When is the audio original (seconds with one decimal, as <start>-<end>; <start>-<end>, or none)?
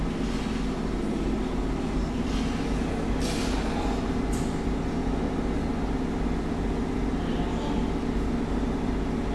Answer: 0.0-9.3